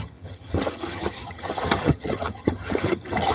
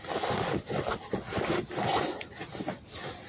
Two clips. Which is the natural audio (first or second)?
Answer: second